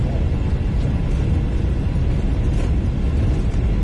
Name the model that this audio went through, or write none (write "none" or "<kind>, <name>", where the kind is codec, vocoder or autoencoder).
none